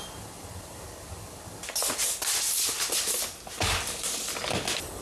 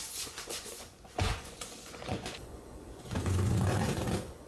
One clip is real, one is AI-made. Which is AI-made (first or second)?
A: second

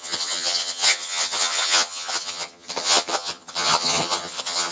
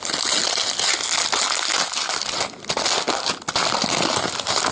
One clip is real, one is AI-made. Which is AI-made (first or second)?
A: first